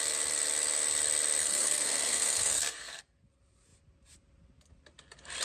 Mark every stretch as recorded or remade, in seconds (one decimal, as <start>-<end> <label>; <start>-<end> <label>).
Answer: 0.0-1.4 recorded; 1.4-3.0 remade; 3.0-5.4 recorded